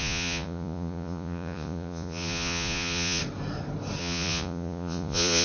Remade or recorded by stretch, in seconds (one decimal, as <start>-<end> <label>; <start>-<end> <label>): 0.0-3.2 remade; 3.2-4.0 recorded; 4.0-5.4 remade